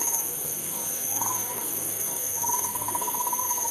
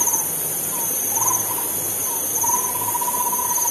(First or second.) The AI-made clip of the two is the first